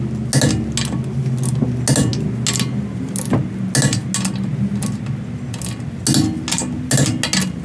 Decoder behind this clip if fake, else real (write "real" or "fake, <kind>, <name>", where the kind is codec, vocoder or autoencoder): real